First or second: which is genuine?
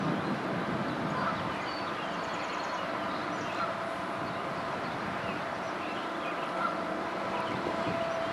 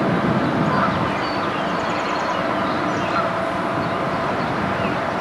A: second